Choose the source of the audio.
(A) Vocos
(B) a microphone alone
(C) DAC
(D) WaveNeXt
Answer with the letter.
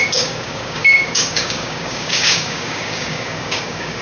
C